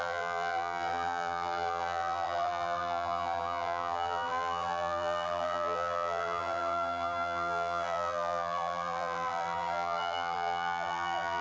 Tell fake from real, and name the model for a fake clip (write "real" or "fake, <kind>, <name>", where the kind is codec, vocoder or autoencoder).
fake, vocoder, BigVGAN v2